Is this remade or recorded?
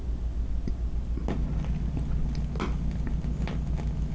recorded